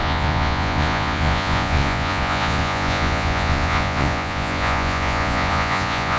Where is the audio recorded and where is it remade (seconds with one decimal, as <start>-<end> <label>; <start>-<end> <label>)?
0.0-6.2 remade